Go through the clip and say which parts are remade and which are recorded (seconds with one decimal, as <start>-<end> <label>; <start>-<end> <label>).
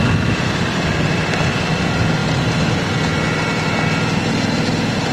0.0-5.1 recorded